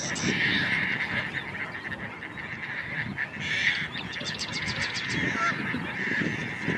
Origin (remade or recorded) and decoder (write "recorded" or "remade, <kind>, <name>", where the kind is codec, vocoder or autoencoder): remade, vocoder, BigVGAN v2